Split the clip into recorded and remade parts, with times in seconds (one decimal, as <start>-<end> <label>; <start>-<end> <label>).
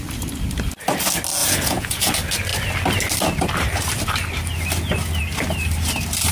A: 0.0-1.4 recorded; 1.4-2.1 remade; 2.1-6.3 recorded